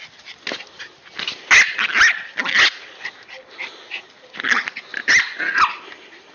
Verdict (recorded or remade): recorded